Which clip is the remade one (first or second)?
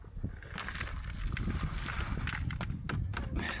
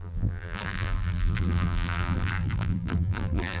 second